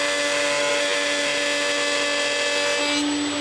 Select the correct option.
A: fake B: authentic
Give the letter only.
B